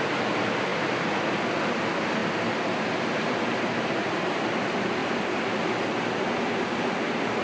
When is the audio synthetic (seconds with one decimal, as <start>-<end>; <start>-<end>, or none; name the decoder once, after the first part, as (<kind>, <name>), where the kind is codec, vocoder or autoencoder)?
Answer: 0.7-1.2 (vocoder, BigVGAN v2); 2.2-4.4; 5.0-5.6